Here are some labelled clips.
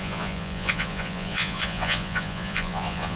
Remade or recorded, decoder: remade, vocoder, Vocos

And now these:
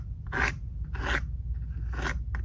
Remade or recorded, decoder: recorded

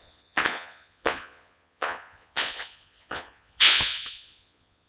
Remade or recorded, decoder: remade, vocoder, Vocos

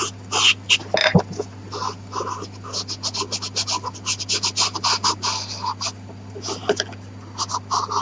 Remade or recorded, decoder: recorded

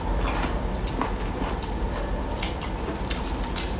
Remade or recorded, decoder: recorded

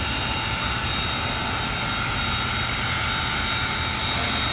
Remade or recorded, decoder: recorded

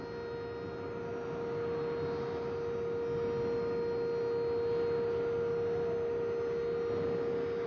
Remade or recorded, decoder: recorded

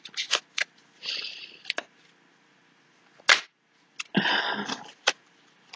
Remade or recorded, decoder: recorded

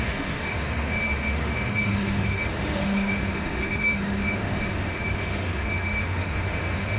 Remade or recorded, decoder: remade, autoencoder, DAC-VAE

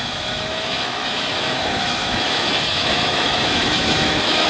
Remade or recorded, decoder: remade, autoencoder, DAC-VAE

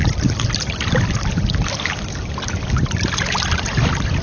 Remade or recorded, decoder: recorded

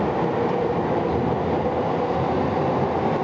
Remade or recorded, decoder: recorded